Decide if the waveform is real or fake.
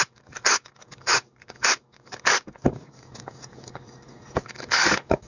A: fake